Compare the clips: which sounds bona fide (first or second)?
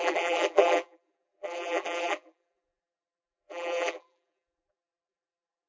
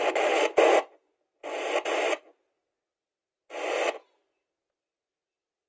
second